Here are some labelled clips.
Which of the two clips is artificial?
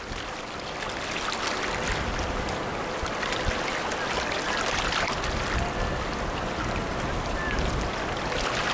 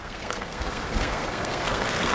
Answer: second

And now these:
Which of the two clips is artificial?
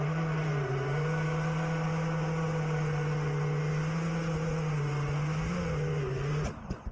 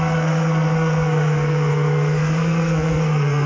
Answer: second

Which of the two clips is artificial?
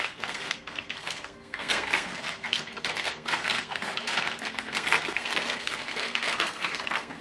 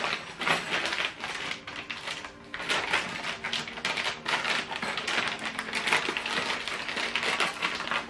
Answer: first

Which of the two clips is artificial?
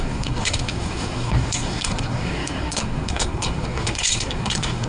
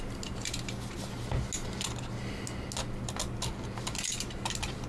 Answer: first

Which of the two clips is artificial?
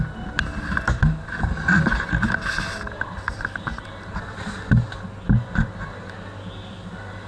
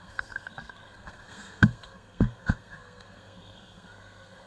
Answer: second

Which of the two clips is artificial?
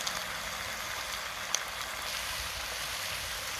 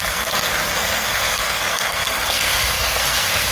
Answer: second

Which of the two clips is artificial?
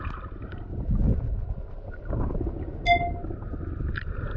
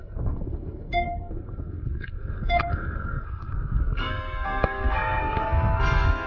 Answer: second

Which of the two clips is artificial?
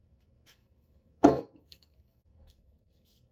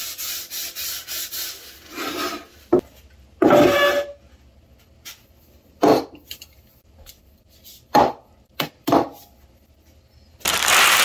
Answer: first